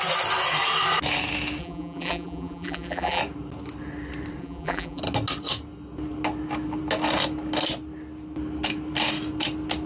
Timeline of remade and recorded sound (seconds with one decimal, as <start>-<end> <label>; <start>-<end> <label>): 0.0-1.6 recorded; 1.6-3.2 remade; 3.2-4.4 recorded; 4.4-5.0 remade; 5.0-9.9 recorded